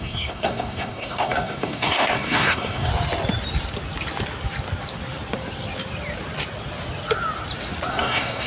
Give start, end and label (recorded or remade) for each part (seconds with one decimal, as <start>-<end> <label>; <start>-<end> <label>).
0.0-2.9 remade; 2.9-7.9 recorded; 7.9-8.5 remade